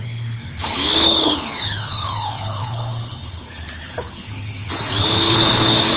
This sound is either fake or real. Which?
fake